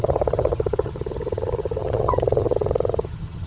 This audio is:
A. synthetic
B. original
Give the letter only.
A